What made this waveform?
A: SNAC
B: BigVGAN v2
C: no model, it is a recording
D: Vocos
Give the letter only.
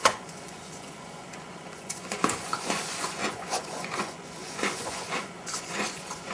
D